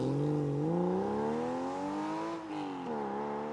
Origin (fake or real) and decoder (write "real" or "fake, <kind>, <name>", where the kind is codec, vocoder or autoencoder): real